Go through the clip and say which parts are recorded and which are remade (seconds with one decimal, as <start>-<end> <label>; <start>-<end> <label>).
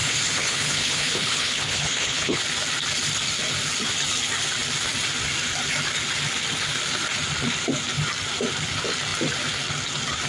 0.0-2.4 remade; 2.4-10.3 recorded